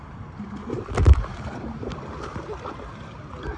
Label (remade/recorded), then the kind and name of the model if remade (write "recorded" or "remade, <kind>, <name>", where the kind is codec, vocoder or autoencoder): recorded